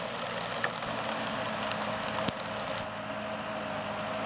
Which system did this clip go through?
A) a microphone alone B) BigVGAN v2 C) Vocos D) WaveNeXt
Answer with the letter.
A